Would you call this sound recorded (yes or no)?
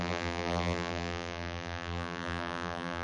no